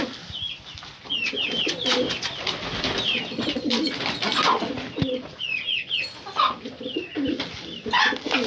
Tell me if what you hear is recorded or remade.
recorded